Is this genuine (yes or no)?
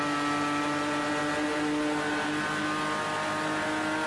yes